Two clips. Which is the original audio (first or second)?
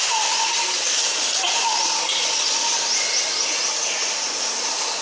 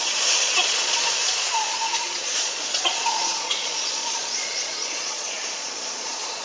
first